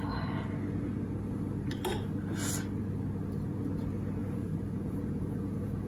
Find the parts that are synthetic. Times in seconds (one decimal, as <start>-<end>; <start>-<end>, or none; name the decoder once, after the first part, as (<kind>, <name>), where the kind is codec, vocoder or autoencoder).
4.2-5.9 (vocoder, Vocos)